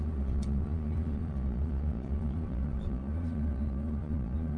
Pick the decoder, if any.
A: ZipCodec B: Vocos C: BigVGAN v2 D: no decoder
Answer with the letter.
B